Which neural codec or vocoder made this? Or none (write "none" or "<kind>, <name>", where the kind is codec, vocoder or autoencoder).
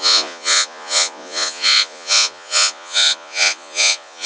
vocoder, Vocos